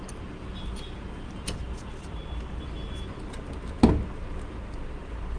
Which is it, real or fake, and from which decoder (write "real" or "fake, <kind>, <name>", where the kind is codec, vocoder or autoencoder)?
real